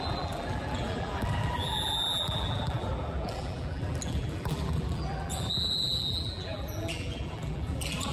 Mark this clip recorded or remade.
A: remade